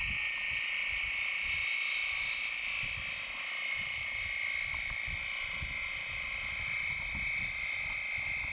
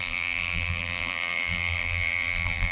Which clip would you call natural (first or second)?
first